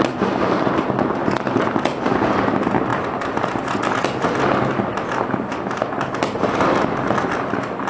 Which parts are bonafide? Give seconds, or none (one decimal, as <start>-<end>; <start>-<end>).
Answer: 0.0-2.9; 3.4-7.9